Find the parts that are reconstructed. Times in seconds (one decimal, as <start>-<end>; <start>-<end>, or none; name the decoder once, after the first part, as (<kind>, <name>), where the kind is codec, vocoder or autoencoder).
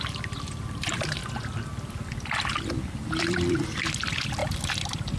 0.0-1.2 (vocoder, BigVGAN v2); 3.1-5.2